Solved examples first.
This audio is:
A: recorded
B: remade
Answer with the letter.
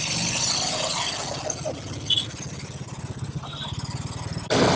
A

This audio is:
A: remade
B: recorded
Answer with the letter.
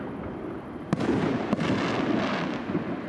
B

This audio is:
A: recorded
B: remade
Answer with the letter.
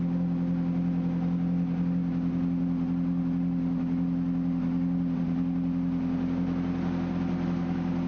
A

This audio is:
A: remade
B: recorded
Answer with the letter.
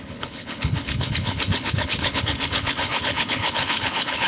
A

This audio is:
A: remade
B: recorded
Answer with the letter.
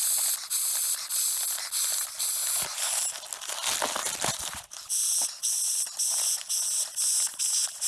B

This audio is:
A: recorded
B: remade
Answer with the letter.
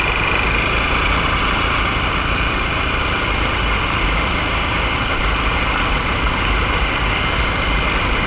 A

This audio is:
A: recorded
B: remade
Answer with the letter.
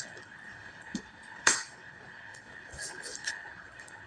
B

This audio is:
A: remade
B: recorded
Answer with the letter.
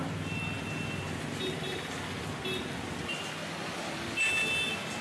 B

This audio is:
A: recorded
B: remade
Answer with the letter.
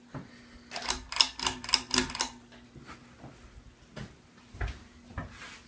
A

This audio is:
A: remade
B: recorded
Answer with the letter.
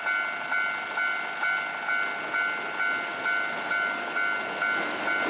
B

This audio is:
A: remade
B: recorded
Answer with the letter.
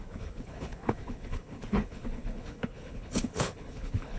A